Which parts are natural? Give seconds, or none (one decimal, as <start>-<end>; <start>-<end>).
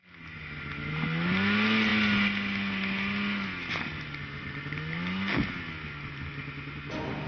0.0-7.3